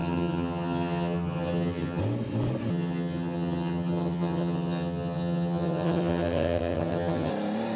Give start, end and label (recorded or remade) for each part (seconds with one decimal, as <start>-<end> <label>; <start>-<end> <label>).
0.0-2.0 remade; 2.0-2.7 recorded; 2.7-7.3 remade; 7.3-7.8 recorded